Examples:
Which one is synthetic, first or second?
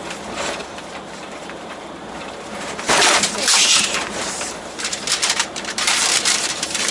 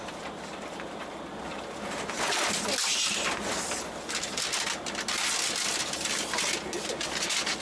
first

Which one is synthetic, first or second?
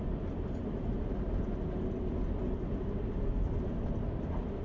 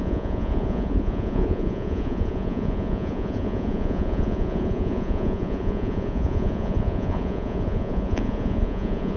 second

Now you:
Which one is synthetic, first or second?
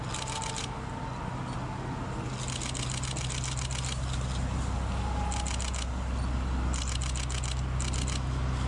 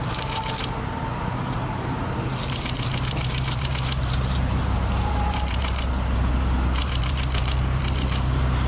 second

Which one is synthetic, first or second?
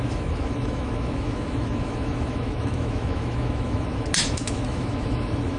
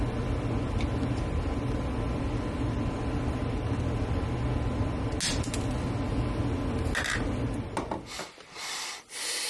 first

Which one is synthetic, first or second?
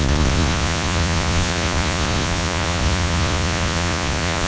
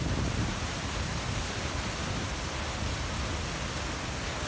first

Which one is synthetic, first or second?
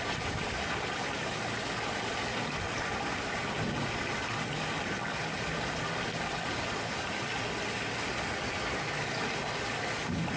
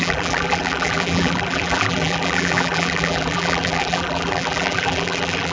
second